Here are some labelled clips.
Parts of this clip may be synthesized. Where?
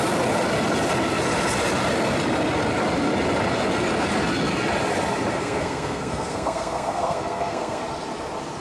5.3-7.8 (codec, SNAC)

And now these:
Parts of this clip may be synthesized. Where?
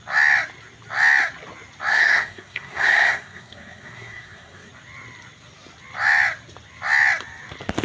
1.9-4.7 (codec, SNAC)